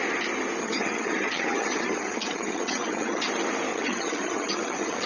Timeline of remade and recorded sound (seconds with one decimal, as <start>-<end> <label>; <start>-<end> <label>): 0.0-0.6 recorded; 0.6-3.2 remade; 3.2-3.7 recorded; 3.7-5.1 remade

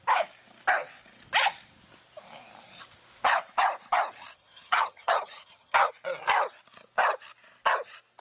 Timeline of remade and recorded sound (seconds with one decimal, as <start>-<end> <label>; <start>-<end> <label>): 0.0-4.3 recorded; 4.3-5.9 remade; 5.9-8.2 recorded

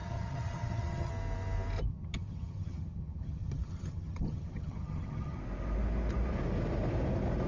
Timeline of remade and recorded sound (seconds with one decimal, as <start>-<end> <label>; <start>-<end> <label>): 0.0-1.1 remade; 1.1-1.9 recorded; 1.9-5.4 remade; 5.4-7.5 recorded

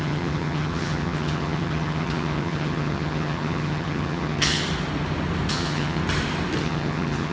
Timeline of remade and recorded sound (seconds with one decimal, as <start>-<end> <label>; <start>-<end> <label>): 0.0-4.6 remade; 4.6-5.5 recorded; 5.5-6.0 remade; 6.0-6.6 recorded; 6.6-7.3 remade

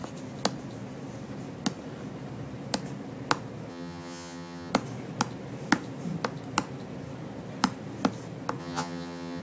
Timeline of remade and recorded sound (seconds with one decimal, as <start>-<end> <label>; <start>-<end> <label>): 0.0-3.7 recorded; 3.7-4.7 remade; 4.7-8.6 recorded; 8.6-9.4 remade

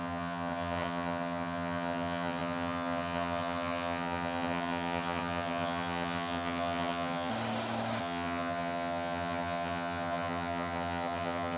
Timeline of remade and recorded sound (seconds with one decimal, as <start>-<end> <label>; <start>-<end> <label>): 0.0-7.3 remade; 7.3-8.0 recorded; 8.0-11.6 remade